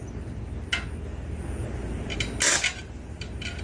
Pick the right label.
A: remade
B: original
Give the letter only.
B